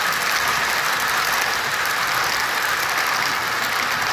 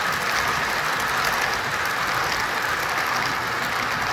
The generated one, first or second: first